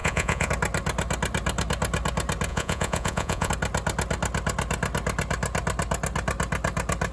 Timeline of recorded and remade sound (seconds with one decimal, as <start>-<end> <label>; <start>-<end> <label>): 0.0-0.5 remade; 0.5-2.5 recorded; 2.5-3.5 remade; 3.5-7.1 recorded